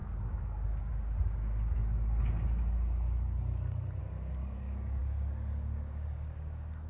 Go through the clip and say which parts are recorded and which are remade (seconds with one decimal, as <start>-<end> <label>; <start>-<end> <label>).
0.0-1.8 remade; 1.8-4.0 recorded; 4.0-6.9 remade